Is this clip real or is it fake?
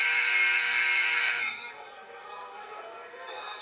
fake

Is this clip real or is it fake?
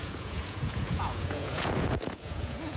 fake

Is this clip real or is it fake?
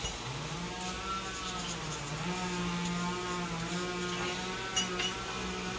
real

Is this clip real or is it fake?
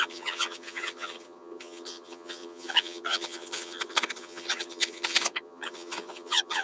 fake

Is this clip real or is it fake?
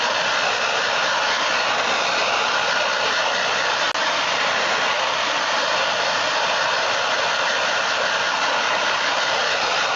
real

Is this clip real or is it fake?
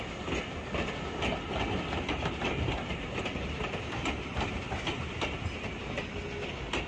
real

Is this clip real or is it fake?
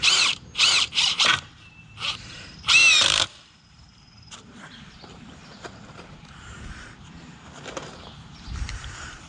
fake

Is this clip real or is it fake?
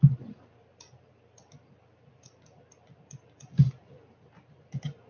real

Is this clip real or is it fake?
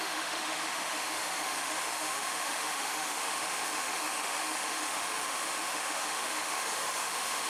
fake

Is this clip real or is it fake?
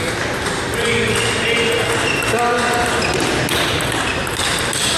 real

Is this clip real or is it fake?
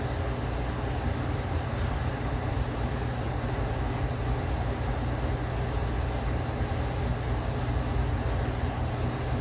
real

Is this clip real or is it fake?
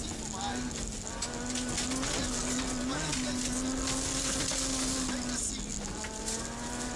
real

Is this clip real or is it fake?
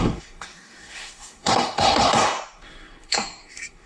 fake